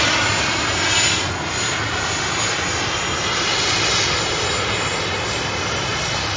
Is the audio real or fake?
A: real